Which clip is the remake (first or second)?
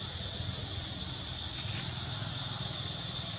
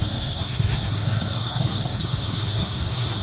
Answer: second